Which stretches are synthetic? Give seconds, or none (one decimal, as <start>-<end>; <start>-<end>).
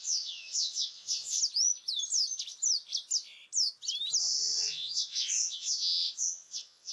0.0-1.4; 4.2-6.9